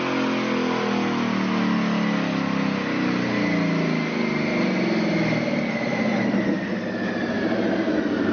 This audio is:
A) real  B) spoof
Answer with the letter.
A